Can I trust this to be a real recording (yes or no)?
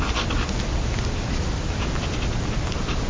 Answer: yes